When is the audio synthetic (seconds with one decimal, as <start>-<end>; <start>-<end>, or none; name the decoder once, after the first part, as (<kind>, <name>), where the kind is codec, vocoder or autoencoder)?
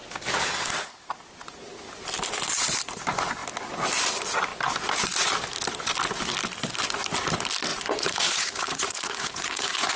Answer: 7.7-10.0 (vocoder, Vocos)